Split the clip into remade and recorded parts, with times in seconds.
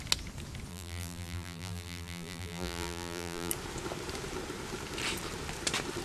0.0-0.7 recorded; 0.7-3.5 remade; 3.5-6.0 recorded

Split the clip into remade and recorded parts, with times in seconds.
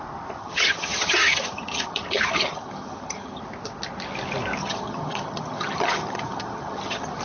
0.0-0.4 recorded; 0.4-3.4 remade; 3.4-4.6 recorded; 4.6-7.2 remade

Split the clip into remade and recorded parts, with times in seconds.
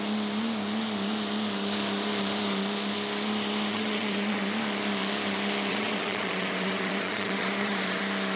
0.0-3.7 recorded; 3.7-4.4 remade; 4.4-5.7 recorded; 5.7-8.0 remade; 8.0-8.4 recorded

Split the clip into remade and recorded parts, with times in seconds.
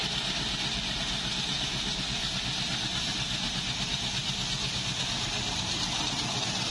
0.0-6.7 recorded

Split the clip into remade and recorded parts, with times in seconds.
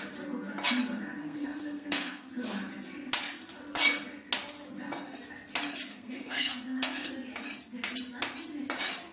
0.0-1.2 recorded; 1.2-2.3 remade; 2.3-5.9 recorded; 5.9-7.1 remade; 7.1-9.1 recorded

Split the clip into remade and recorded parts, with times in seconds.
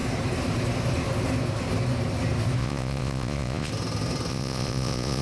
0.0-2.6 recorded; 2.6-3.7 remade; 3.7-4.3 recorded; 4.3-5.2 remade